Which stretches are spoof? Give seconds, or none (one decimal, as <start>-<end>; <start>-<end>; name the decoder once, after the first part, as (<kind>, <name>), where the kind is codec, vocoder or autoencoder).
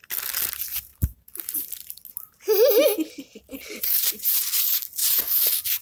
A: none